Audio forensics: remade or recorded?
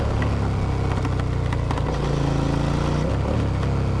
recorded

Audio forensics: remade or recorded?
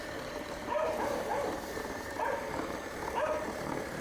remade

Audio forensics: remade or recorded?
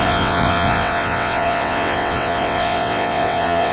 remade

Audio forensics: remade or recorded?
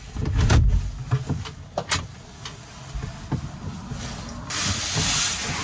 recorded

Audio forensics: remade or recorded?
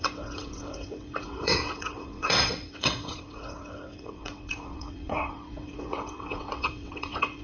remade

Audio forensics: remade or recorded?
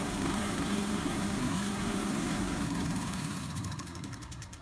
remade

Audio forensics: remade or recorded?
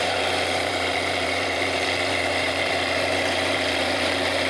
remade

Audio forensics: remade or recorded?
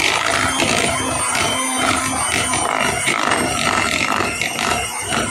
recorded